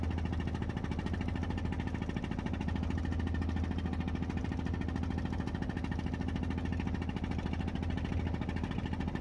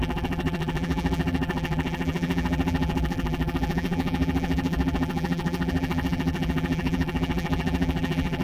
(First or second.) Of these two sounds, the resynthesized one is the second